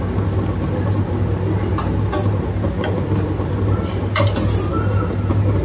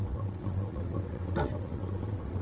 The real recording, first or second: first